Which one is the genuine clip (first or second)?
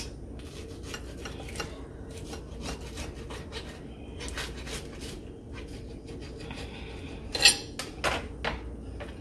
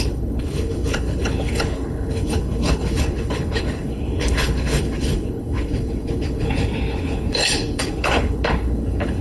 first